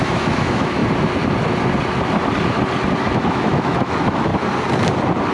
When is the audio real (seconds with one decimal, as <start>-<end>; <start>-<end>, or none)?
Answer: 0.8-3.0; 4.3-5.3